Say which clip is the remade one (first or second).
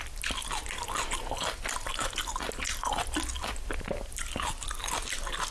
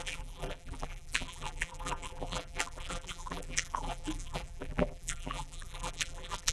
second